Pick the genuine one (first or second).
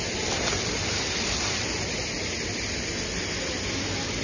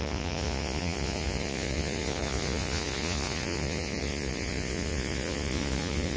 first